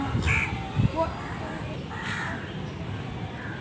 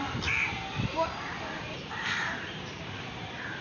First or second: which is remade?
second